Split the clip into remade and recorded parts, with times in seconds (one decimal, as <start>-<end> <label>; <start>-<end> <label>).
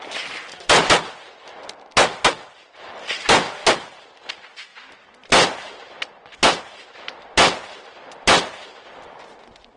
0.0-9.8 recorded